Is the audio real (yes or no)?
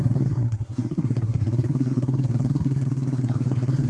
no